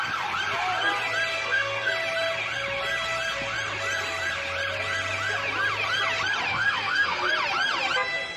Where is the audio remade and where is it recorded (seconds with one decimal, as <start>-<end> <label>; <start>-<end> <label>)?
0.0-1.3 recorded; 1.3-1.9 remade; 1.9-6.5 recorded; 6.5-7.3 remade; 7.3-8.4 recorded